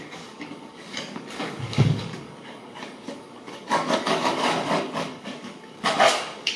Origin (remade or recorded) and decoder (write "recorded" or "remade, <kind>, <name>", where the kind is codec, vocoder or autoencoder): remade, codec, DAC